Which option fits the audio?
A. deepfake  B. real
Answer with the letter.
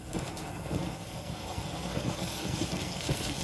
A